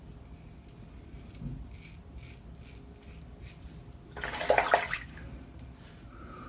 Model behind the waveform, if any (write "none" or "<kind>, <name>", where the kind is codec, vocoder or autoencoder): none